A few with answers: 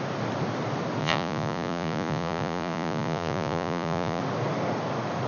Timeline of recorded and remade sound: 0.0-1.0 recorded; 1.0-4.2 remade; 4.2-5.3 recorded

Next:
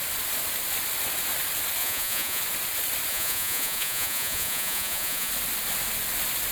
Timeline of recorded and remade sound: 0.0-1.8 recorded; 1.8-2.4 remade; 2.4-3.1 recorded; 3.1-5.3 remade; 5.3-6.5 recorded

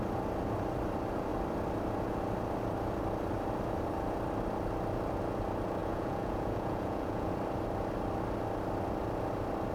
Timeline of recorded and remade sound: 0.0-5.8 recorded; 5.8-7.3 remade; 7.3-9.7 recorded

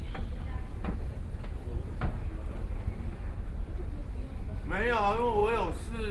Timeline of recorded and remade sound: 0.0-0.7 recorded; 0.7-2.0 remade; 2.0-6.1 recorded

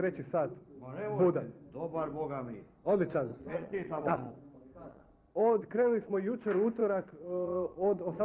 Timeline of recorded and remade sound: 0.0-3.3 recorded; 3.3-4.3 remade; 4.3-4.9 recorded; 4.9-6.1 remade; 6.1-6.8 recorded; 6.8-8.2 remade